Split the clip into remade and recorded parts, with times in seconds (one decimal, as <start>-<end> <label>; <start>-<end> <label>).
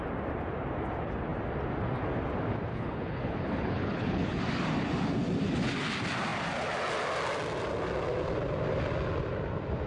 0.0-2.7 recorded; 2.7-4.4 remade; 4.4-9.9 recorded